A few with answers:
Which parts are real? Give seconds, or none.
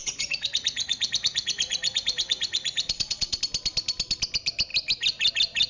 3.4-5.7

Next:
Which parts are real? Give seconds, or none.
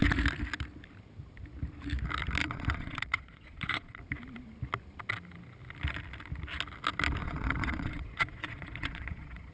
0.0-2.4; 4.0-7.2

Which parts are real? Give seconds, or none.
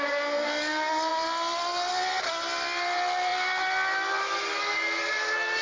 0.0-5.6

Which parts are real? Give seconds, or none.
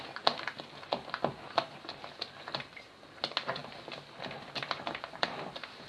0.0-5.9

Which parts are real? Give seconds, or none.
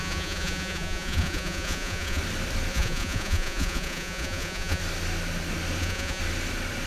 2.2-2.7; 4.8-5.8; 6.2-6.9